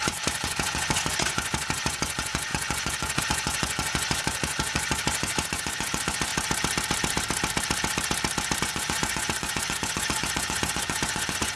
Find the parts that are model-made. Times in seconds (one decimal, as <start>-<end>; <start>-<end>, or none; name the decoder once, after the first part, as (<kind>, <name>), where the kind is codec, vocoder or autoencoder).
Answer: 0.0-6.3 (vocoder, Vocos); 8.6-11.6